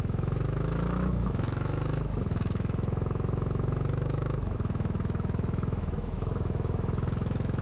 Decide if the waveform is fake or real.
fake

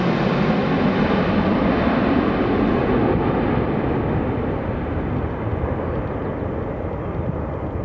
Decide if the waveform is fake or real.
real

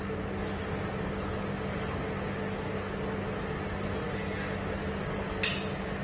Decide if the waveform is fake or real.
real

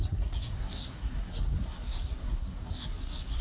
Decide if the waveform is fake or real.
fake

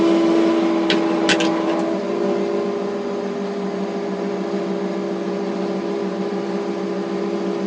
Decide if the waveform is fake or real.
real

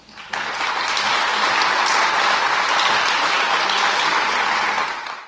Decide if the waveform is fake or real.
real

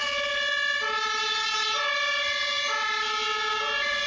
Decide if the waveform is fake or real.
real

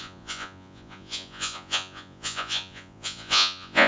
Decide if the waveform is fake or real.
fake